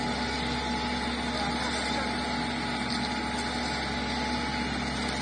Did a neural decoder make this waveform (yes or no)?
no